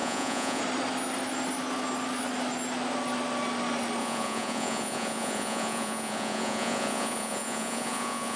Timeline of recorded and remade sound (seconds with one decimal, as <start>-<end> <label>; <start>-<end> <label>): 0.0-0.6 remade; 0.6-4.0 recorded; 4.0-8.4 remade